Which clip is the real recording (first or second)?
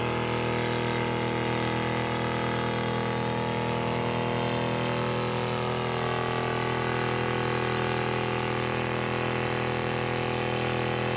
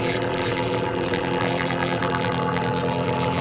first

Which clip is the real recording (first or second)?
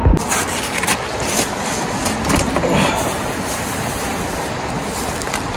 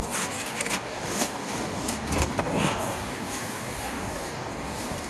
first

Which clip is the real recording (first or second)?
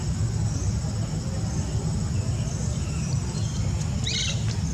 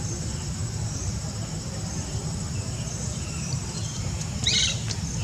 first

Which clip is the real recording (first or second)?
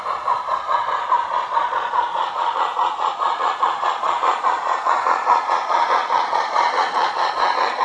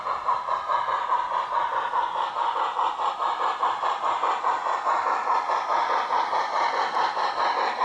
second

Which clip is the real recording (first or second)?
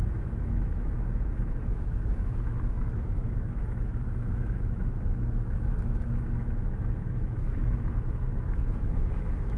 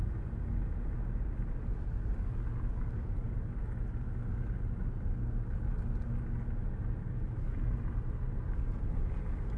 second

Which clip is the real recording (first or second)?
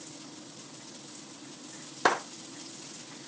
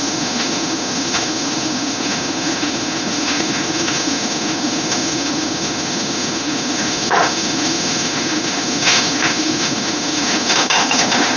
first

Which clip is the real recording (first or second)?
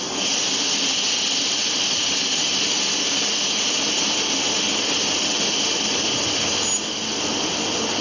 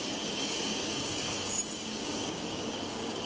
first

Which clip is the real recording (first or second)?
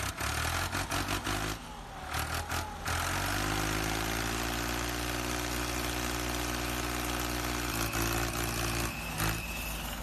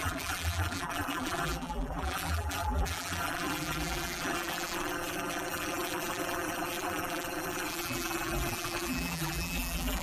first